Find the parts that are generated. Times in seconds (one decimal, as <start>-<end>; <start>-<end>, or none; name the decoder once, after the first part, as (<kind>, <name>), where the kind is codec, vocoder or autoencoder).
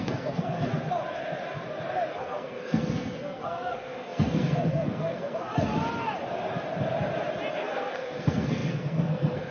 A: 0.0-0.7 (codec, SNAC); 2.1-5.5; 7.5-9.5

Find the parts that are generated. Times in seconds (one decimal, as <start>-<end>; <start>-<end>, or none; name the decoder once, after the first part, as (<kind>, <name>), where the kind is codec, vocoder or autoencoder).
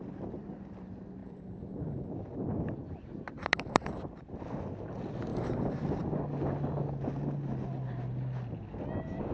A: 1.2-2.1 (vocoder, BigVGAN v2); 3.4-4.0; 5.3-5.8